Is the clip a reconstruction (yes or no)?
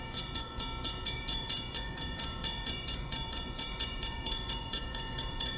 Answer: yes